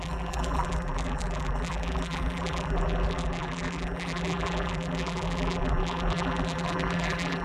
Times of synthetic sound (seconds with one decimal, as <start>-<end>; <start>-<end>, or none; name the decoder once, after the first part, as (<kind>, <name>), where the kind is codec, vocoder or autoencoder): 0.0-7.4 (vocoder, BigVGAN v2)